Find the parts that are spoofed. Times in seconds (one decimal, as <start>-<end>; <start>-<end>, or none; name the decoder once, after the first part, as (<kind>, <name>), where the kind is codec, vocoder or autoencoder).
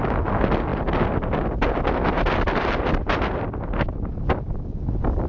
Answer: none